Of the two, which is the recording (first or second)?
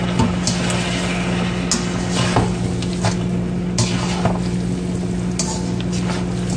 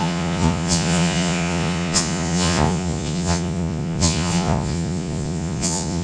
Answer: first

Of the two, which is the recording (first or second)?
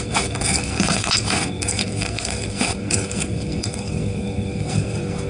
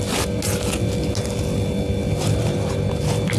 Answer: second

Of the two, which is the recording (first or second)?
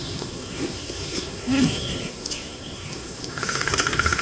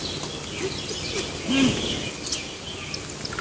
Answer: second